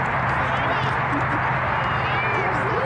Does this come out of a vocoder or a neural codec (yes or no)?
no